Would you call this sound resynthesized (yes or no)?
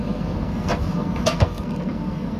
yes